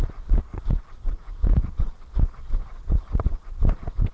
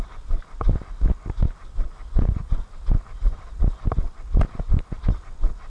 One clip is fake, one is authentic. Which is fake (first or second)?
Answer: first